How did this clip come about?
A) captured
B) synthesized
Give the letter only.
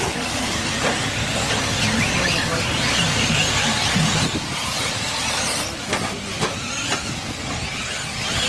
A